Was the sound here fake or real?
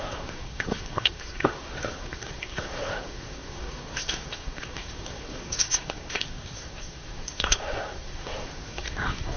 fake